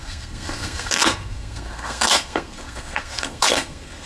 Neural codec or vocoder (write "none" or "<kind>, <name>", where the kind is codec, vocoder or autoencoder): codec, SNAC